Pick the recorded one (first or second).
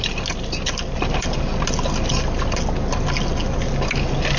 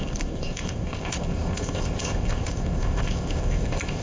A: first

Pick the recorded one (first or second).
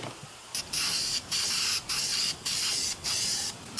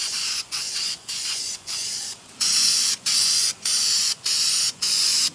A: first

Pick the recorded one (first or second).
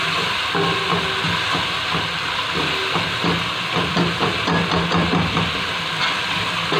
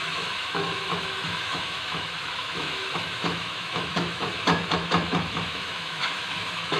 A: first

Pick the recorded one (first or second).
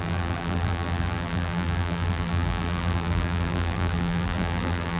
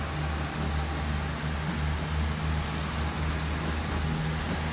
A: second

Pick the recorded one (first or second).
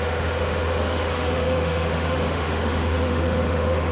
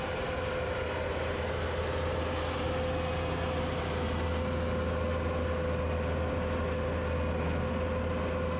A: second